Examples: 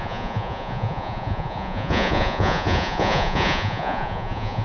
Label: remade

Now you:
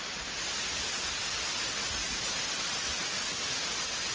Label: recorded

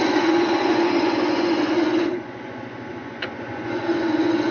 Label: remade